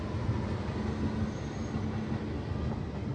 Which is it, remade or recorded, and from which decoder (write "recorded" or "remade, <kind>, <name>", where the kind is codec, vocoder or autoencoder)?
recorded